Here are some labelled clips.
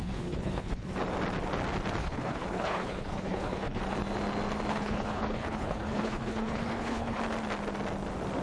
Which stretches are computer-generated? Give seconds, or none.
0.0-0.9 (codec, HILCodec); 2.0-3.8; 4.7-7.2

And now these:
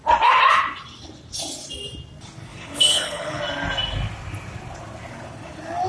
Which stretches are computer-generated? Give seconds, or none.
2.5-3.4 (codec, HILCodec)